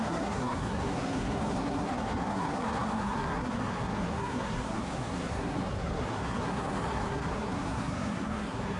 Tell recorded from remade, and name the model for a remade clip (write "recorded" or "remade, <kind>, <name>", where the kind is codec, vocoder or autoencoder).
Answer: remade, codec, SNAC